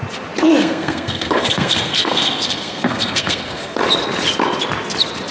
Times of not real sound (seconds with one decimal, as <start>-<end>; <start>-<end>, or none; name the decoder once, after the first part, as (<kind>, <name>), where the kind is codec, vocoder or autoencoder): 0.6-3.8 (codec, SNAC)